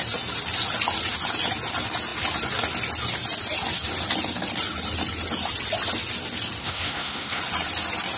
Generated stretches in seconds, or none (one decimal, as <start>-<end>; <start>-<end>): 6.6-7.4